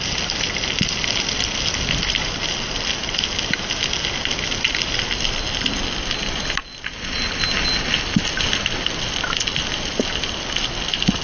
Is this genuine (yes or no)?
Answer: yes